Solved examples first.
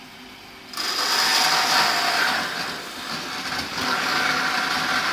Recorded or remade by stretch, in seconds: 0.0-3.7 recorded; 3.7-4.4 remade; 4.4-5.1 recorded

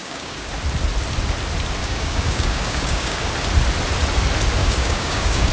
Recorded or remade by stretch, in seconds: 0.0-0.5 remade; 0.5-1.8 recorded; 1.8-3.3 remade; 3.3-4.6 recorded; 4.6-5.5 remade

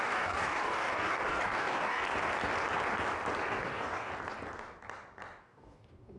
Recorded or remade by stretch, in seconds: 0.0-2.0 remade; 2.0-3.5 recorded; 3.5-4.1 remade; 4.1-5.4 recorded; 5.4-6.2 remade